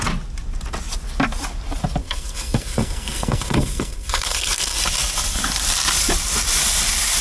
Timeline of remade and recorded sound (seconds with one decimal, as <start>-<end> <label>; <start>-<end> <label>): 0.0-2.0 recorded; 2.0-4.8 remade; 4.8-7.2 recorded